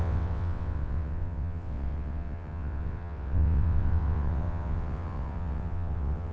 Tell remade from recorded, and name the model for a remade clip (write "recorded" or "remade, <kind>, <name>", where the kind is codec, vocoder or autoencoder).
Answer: remade, vocoder, WaveNeXt